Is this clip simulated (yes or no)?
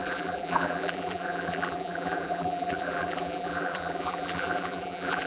yes